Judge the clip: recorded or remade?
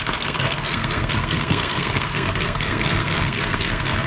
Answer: remade